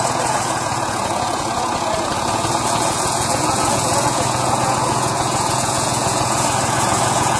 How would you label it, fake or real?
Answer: fake